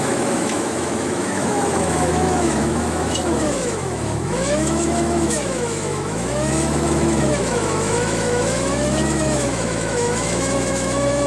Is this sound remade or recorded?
remade